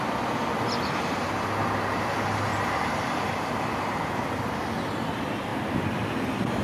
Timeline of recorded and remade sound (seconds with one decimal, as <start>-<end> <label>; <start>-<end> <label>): 0.0-2.5 recorded; 2.5-4.4 remade; 4.4-6.6 recorded